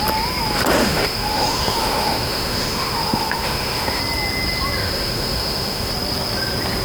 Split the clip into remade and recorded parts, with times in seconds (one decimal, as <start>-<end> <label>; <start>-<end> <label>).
0.0-0.8 recorded; 0.8-4.0 remade; 4.0-4.8 recorded; 4.8-5.9 remade; 5.9-6.8 recorded